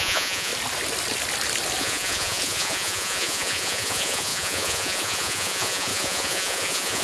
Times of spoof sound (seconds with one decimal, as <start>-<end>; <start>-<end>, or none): 0.0-0.5; 1.8-7.0